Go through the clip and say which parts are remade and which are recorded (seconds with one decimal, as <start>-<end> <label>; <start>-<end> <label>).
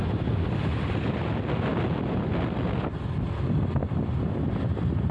0.0-5.1 recorded